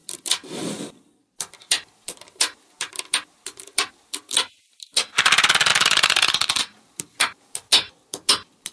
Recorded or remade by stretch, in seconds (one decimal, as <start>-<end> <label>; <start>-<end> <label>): 0.0-8.7 recorded